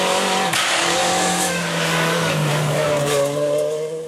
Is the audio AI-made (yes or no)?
yes